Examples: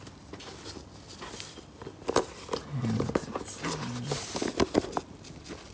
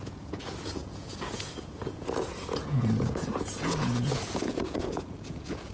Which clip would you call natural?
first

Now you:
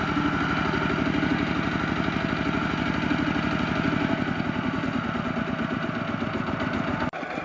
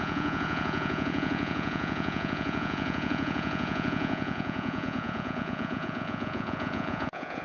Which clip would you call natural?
first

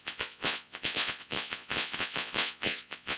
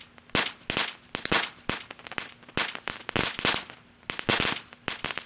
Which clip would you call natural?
second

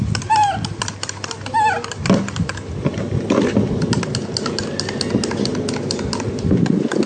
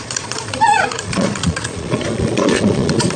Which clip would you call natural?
first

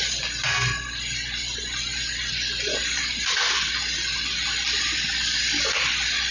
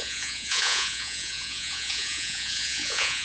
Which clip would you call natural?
first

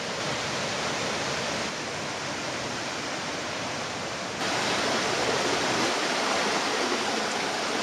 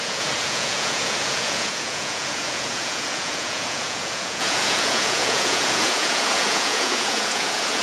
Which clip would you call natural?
first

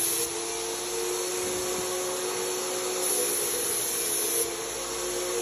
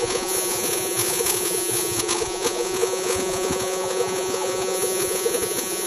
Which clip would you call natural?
first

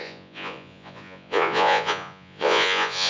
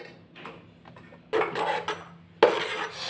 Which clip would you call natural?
second